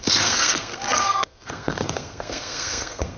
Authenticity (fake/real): fake